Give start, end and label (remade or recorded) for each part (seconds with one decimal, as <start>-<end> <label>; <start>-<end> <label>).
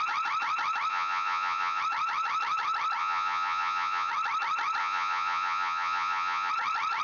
0.0-0.9 recorded; 0.9-1.8 remade; 1.8-3.0 recorded; 3.0-4.1 remade; 4.1-4.8 recorded; 4.8-6.5 remade; 6.5-7.0 recorded